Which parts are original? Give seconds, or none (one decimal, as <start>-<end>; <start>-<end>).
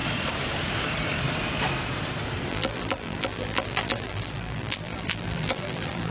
0.0-2.5